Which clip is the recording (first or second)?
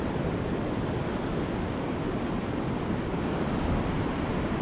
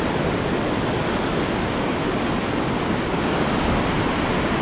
second